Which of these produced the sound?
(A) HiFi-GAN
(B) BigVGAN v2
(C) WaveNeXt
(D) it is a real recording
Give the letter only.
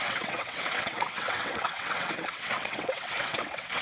C